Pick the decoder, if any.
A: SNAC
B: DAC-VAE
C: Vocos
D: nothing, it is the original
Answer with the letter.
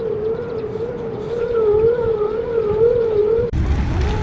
D